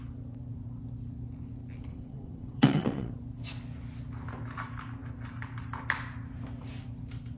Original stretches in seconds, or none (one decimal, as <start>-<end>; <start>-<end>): 0.0-1.9; 3.1-7.4